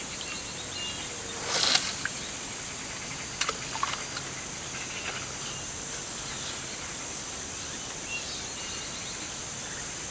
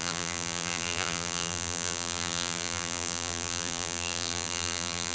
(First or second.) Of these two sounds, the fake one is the second